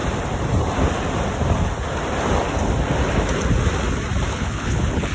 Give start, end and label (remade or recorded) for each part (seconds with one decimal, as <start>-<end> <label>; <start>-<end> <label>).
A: 0.0-4.3 recorded; 4.3-5.1 remade